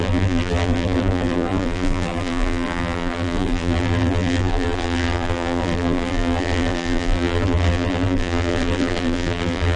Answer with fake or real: fake